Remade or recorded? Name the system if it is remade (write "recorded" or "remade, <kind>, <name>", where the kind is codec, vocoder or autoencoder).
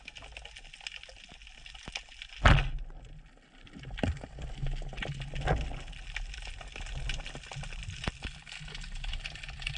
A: recorded